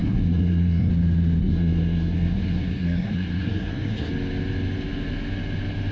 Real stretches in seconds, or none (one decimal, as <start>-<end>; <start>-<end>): 0.9-1.4; 4.1-5.9